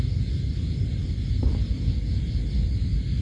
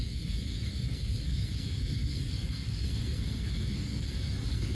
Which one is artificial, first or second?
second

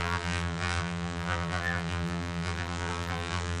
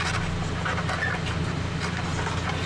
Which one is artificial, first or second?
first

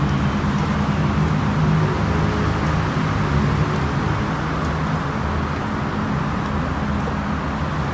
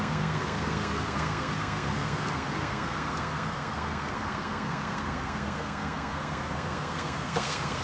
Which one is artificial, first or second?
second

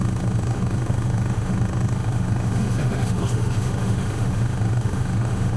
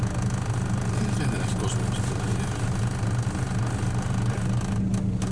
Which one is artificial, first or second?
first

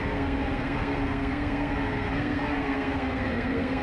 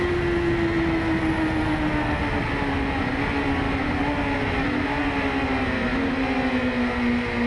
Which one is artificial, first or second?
first